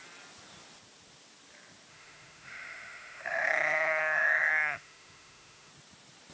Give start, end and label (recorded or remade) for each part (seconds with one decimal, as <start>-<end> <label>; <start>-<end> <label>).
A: 0.0-1.9 recorded; 1.9-5.7 remade; 5.7-6.3 recorded